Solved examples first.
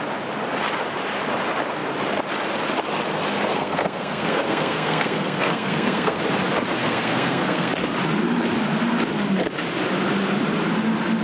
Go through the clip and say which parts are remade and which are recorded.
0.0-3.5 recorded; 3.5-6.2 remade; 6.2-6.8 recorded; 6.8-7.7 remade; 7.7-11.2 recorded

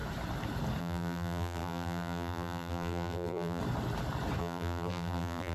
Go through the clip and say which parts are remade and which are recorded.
0.0-0.8 recorded; 0.8-3.6 remade; 3.6-4.4 recorded; 4.4-5.5 remade

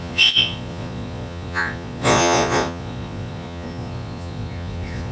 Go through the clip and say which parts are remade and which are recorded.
0.0-5.1 remade

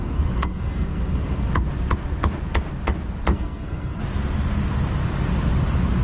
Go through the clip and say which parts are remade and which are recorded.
0.0-1.5 remade; 1.5-3.3 recorded; 3.3-4.0 remade; 4.0-6.0 recorded

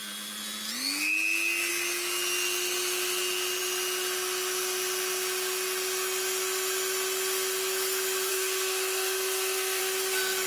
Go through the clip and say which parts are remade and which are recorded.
0.0-8.3 recorded; 8.3-9.8 remade; 9.8-10.5 recorded

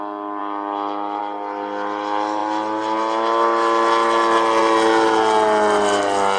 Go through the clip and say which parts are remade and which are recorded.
0.0-6.4 recorded

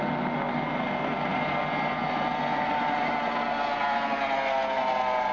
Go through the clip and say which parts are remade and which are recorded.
0.0-5.3 recorded

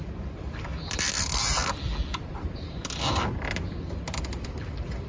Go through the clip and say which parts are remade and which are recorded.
0.0-5.1 recorded